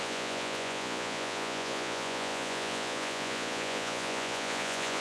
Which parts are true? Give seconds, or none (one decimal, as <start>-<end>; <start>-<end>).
none